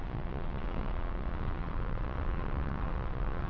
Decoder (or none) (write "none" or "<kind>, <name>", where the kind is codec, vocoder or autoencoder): vocoder, WaveNeXt